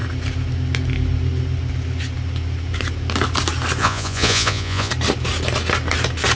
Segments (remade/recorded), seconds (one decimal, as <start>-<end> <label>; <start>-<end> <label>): 0.0-3.8 recorded; 3.8-4.9 remade; 4.9-6.3 recorded